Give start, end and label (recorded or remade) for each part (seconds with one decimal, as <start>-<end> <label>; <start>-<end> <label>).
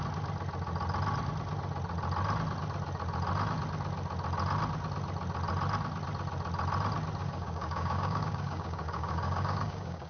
0.0-7.2 recorded; 7.2-10.1 remade